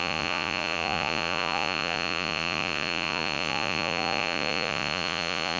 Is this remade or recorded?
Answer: remade